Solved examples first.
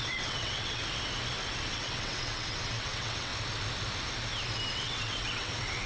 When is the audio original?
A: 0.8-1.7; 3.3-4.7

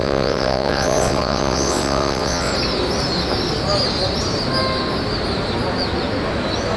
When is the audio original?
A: 2.5-6.8

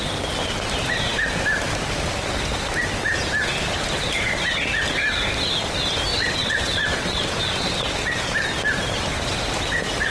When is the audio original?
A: 0.0-6.1; 7.4-10.1